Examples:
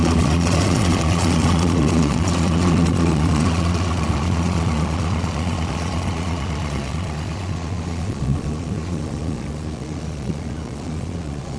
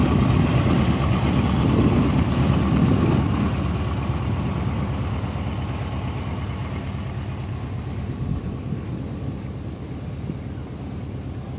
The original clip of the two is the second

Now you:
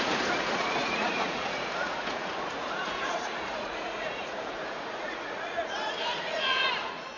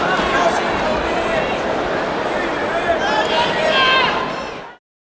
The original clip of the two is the second